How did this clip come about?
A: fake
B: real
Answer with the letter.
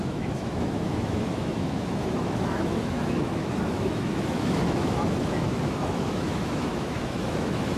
A